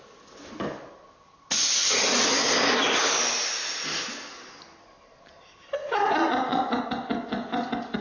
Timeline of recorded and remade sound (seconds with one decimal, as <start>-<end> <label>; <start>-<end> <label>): 0.0-5.8 recorded; 5.8-6.8 remade; 6.8-8.0 recorded